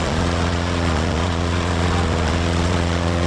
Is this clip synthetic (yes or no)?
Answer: yes